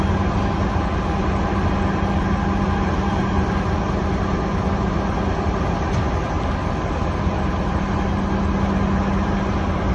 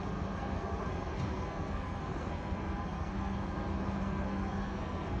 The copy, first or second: second